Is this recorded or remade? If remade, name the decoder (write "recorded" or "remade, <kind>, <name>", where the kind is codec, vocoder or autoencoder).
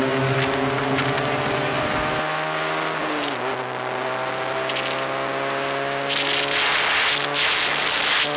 recorded